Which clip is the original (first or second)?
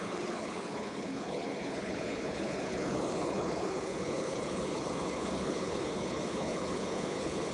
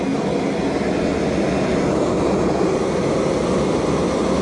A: second